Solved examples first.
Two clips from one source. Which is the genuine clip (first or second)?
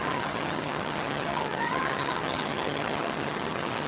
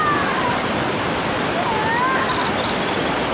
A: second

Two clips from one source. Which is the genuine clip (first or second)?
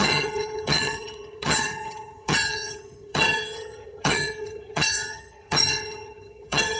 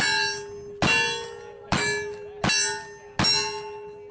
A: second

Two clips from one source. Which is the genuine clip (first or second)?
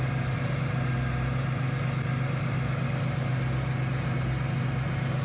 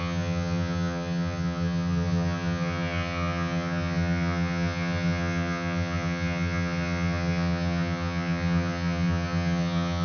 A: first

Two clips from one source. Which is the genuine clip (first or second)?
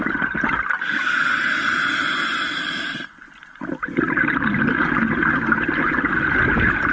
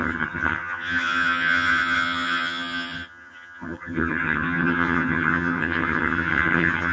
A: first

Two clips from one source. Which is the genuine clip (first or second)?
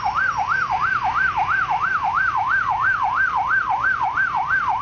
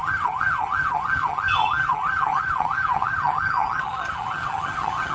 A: first